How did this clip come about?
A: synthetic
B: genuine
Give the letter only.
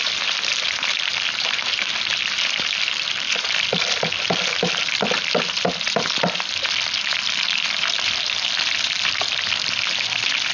A